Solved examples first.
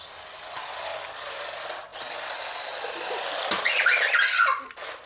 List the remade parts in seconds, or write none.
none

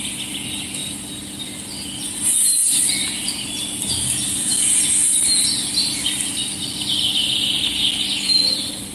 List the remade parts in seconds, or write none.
none